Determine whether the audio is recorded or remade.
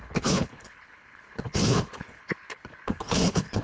remade